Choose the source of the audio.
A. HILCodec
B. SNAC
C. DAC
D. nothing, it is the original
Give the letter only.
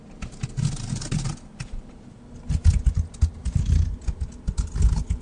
D